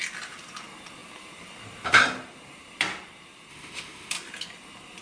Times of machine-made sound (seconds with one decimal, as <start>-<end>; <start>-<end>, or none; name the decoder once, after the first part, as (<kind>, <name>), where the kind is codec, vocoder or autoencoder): 3.5-4.1 (autoencoder, DAC-VAE)